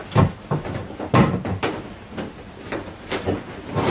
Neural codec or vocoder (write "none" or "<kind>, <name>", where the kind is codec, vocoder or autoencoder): none